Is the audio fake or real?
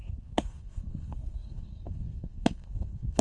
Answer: fake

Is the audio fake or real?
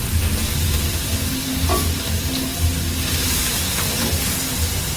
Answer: real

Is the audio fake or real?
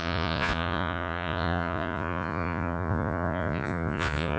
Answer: fake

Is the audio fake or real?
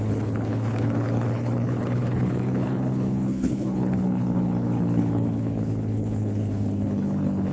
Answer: fake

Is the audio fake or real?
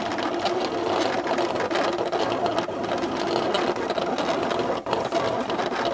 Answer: real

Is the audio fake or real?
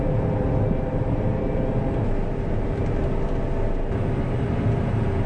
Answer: real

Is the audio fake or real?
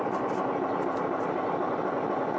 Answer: real